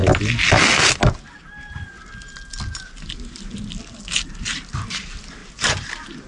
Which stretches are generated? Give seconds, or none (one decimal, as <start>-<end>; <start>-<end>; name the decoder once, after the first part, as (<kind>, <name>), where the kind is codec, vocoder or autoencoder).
5.4-6.3 (vocoder, BigVGAN v2)